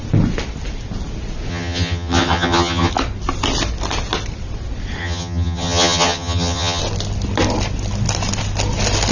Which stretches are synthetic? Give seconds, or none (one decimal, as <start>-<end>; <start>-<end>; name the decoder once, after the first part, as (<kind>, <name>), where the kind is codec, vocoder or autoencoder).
1.5-2.9 (vocoder, HiFi-GAN); 5.0-6.8